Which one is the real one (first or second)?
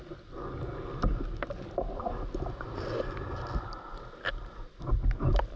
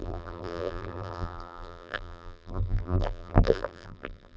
first